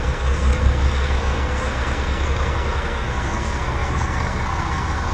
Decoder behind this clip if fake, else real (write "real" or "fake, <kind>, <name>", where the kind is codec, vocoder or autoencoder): fake, codec, SNAC